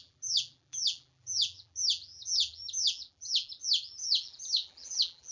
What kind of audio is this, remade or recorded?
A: remade